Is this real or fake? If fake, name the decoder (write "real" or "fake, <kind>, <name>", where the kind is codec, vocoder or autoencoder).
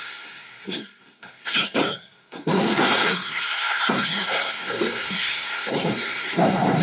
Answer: fake, codec, SNAC